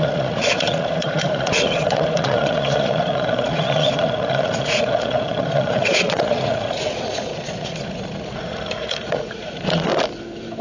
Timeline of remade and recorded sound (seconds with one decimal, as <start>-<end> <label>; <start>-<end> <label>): 0.0-9.9 remade; 9.9-10.6 recorded